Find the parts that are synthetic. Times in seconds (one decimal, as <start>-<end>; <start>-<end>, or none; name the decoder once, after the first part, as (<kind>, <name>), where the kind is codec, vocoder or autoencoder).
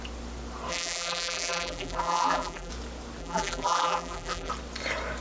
0.7-2.7 (vocoder, BigVGAN v2); 3.2-4.5